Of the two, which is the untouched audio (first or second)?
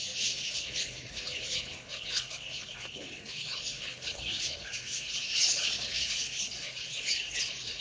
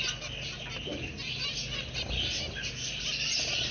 second